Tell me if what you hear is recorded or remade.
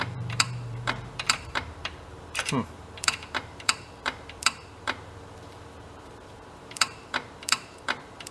remade